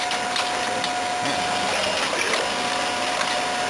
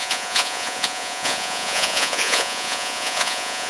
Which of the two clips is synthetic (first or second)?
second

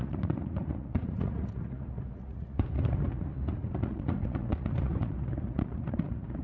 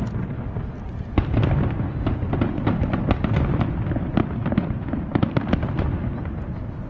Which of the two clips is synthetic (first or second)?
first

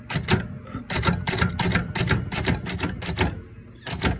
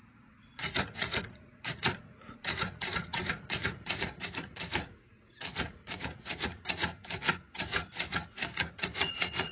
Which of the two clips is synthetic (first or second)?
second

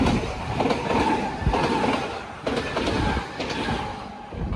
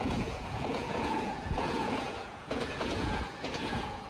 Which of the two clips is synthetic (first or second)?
second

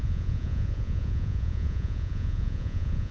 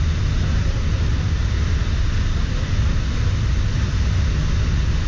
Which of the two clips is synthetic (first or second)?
first